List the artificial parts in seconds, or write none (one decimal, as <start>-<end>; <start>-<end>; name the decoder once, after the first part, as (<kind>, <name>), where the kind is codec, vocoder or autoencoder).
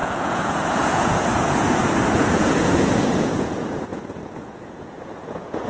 0.0-5.7 (vocoder, Vocos)